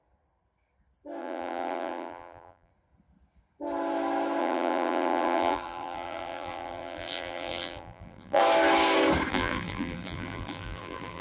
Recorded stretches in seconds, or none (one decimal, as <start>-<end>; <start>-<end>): 0.0-1.2; 2.7-4.4; 8.4-9.3